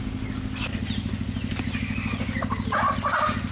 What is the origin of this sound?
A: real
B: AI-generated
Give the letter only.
A